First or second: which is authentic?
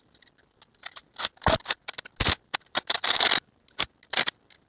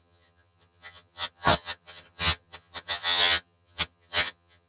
first